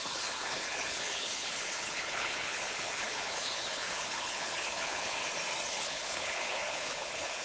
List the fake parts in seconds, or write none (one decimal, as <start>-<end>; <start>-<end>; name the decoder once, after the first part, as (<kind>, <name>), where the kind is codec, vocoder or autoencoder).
0.0-5.2 (codec, HILCodec); 5.7-7.4

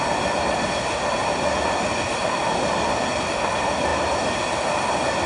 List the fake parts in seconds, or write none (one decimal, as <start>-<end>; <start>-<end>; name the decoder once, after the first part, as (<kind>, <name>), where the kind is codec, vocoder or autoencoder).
none

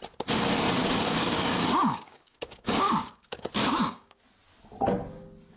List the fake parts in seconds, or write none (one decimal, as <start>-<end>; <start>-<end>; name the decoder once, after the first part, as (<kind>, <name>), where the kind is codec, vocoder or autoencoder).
0.8-4.2 (codec, DAC)

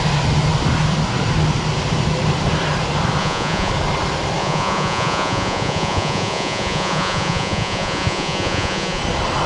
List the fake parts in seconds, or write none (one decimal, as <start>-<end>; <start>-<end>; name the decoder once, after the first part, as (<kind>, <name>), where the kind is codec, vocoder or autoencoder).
3.2-3.7 (vocoder, Vocos); 4.4-9.0